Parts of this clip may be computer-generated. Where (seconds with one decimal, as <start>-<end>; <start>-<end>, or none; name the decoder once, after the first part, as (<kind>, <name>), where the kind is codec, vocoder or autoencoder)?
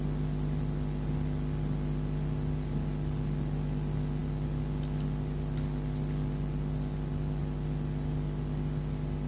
none